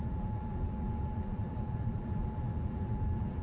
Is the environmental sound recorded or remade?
remade